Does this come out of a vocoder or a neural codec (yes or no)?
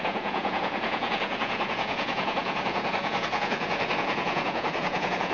yes